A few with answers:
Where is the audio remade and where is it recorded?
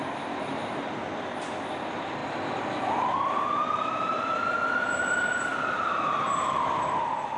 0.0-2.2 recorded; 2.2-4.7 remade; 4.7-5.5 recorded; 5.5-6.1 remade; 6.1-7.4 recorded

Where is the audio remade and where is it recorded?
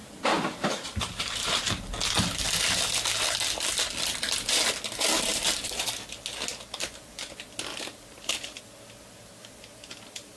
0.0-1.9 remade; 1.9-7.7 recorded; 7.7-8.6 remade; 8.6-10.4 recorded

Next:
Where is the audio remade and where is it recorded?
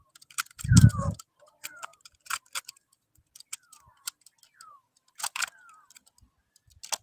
0.0-1.9 recorded; 1.9-6.1 remade; 6.1-7.0 recorded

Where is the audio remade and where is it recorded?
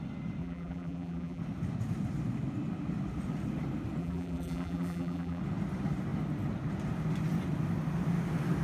0.0-0.4 recorded; 0.4-1.4 remade; 1.4-4.0 recorded; 4.0-5.4 remade; 5.4-8.6 recorded